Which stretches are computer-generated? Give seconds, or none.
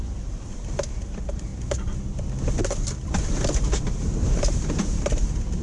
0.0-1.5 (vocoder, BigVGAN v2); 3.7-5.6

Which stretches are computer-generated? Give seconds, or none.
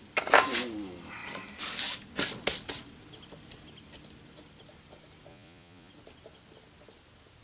5.3-5.9 (vocoder, Vocos)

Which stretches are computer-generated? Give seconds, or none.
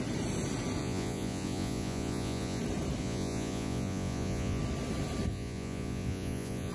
0.8-2.6 (vocoder, Vocos); 3.0-4.6; 5.3-6.7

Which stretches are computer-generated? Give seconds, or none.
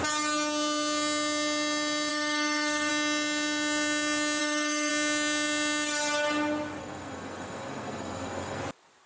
2.1-2.9 (codec, SNAC); 4.4-4.9; 6.8-8.6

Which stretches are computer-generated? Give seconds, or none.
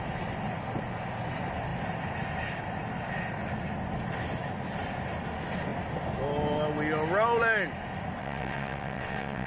8.2-9.5 (vocoder, WaveNeXt)